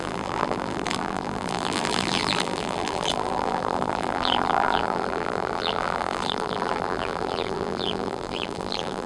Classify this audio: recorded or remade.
remade